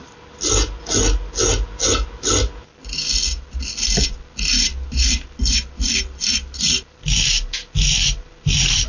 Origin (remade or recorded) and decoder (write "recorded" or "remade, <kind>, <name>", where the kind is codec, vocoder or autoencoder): recorded